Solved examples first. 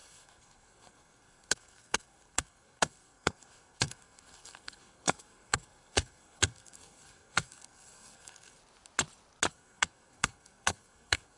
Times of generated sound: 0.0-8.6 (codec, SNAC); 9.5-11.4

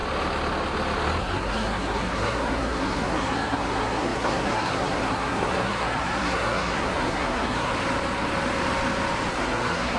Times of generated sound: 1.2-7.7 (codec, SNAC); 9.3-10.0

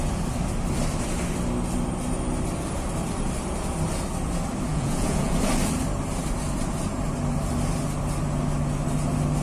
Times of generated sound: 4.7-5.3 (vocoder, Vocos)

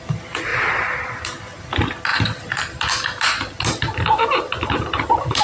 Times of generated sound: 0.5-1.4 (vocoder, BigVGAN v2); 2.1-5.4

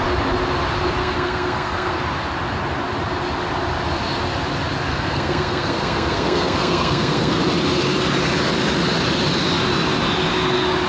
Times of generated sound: 1.0-2.0 (codec, SNAC); 4.9-7.4

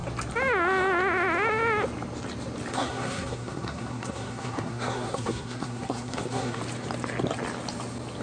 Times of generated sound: 2.7-6.6 (codec, SNAC)

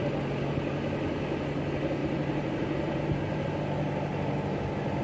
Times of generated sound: 2.0-3.2 (vocoder, BigVGAN v2)

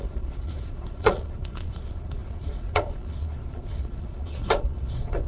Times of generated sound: 0.0-5.3 (vocoder, Vocos)